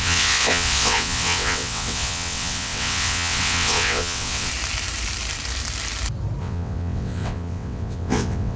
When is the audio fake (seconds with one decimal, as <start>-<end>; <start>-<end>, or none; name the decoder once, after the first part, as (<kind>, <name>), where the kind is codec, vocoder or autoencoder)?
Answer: 0.0-4.5 (vocoder, WaveNeXt); 6.4-8.6